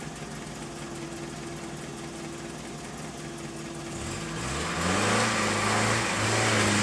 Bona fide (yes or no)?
yes